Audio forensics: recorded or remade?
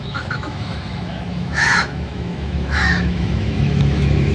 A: remade